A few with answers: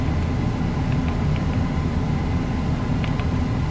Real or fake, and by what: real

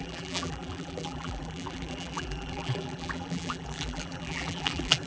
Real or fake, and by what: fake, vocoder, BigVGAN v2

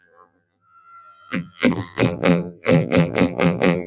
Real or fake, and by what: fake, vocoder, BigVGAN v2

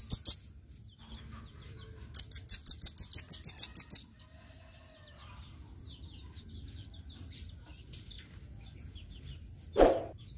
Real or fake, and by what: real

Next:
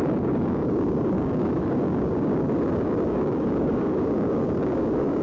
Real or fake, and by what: fake, codec, DAC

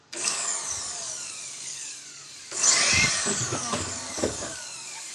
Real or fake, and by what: fake, codec, DAC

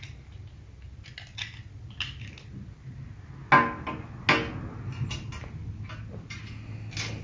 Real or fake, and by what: real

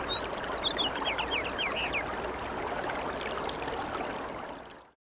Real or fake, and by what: real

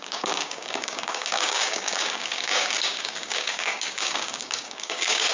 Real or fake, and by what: fake, codec, DAC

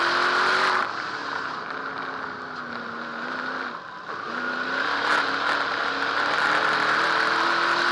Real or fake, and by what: real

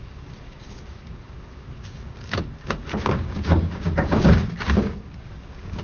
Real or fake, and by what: fake, codec, DAC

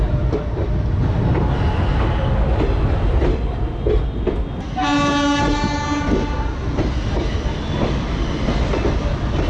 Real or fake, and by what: real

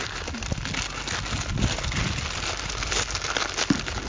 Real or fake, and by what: real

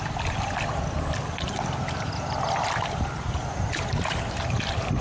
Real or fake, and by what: real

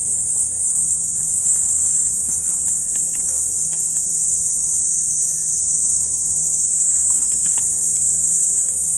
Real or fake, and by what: fake, codec, SNAC